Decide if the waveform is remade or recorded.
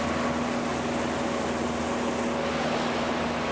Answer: recorded